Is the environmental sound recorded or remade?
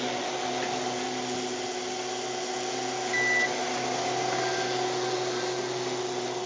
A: recorded